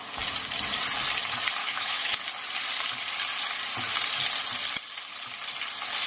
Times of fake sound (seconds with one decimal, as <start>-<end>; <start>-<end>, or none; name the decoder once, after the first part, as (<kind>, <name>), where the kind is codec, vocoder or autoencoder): 1.6-2.2 (autoencoder, DAC-VAE)